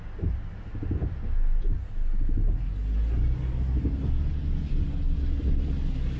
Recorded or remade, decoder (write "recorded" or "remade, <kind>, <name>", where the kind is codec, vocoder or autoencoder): recorded